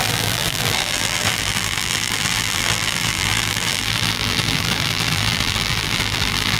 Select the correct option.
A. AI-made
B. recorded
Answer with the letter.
A